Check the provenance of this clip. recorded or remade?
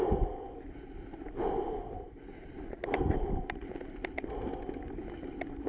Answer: recorded